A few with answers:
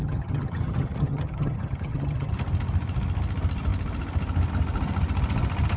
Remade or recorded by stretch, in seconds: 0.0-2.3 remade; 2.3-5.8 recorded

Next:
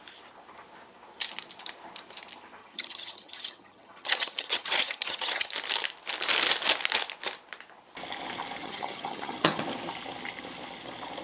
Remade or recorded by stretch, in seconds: 0.0-2.6 recorded; 2.6-5.5 remade; 5.5-8.6 recorded; 8.6-9.6 remade; 9.6-11.2 recorded

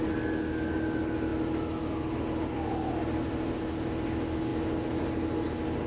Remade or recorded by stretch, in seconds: 0.0-5.9 recorded